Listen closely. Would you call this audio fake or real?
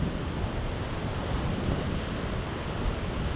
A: real